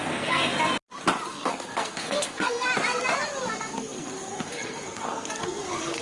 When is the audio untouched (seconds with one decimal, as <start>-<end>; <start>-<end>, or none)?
0.5-1.3; 2.7-3.5